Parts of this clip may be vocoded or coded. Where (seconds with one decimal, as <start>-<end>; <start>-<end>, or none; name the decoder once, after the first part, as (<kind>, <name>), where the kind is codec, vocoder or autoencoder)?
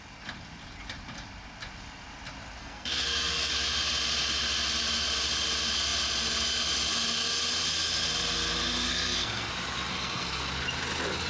2.6-3.5 (codec, SNAC); 8.9-9.5; 9.9-10.4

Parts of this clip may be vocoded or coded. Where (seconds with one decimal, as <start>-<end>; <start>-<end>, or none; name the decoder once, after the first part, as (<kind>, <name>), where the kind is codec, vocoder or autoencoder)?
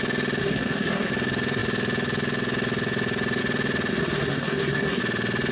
0.4-1.1 (codec, SNAC); 3.9-5.0